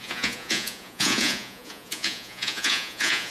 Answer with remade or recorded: remade